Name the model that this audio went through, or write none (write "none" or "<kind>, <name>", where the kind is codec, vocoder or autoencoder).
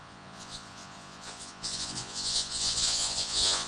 vocoder, Vocos